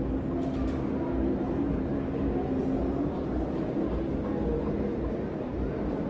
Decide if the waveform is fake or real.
real